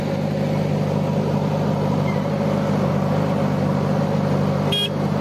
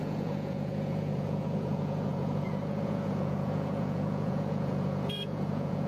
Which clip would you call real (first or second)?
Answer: first